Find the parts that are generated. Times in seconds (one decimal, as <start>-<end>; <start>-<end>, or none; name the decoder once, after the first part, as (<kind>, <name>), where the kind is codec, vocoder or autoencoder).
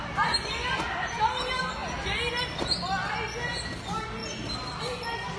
1.8-2.6 (vocoder, BigVGAN v2)